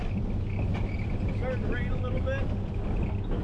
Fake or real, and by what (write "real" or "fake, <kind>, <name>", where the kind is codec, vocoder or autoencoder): real